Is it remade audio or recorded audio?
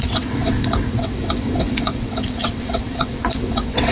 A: remade